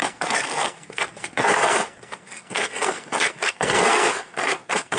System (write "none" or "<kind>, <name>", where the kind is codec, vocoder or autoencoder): codec, SNAC